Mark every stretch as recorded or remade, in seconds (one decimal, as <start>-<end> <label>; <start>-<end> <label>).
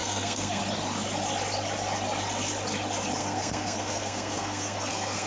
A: 0.0-0.6 remade; 0.6-3.2 recorded; 3.2-5.3 remade